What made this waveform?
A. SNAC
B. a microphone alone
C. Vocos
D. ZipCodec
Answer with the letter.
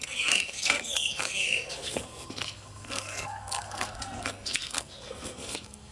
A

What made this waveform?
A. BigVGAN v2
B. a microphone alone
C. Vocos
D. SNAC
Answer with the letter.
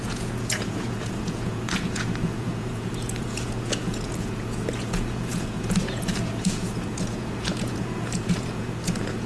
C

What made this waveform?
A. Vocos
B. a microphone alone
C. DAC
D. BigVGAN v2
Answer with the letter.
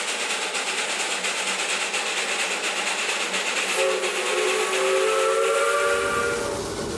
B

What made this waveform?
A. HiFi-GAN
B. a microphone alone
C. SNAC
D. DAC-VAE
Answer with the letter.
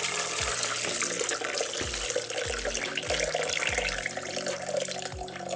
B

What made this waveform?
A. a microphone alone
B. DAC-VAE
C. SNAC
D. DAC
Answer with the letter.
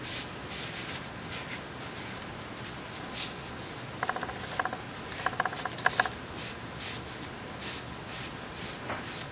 A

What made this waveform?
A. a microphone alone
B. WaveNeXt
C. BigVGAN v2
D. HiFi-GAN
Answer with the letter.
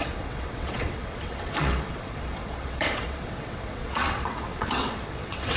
B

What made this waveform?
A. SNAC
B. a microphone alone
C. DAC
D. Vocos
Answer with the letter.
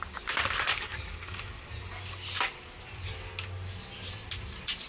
B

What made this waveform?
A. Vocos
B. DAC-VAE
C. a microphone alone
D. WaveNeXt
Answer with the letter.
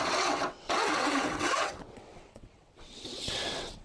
D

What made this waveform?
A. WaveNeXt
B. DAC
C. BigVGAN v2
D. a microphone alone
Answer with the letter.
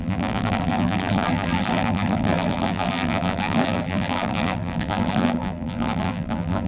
C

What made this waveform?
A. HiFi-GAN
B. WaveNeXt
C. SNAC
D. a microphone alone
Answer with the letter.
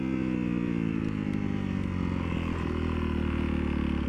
D